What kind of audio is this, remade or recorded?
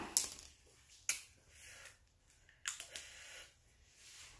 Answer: recorded